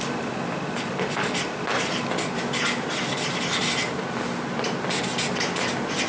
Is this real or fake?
real